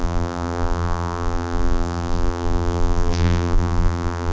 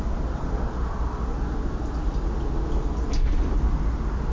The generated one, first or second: first